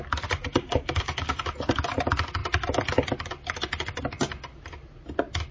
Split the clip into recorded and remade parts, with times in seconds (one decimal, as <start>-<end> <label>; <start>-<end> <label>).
0.0-0.5 recorded; 0.5-1.4 remade; 1.4-5.5 recorded